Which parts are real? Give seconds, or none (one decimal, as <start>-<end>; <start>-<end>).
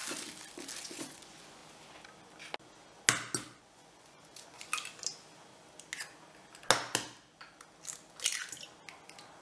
0.0-0.8; 1.6-3.6; 4.7-9.4